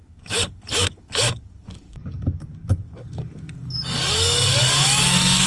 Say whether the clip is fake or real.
fake